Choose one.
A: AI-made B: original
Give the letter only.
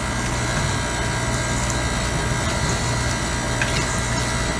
B